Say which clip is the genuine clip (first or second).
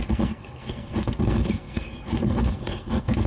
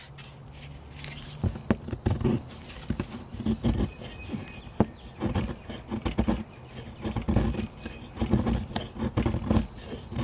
second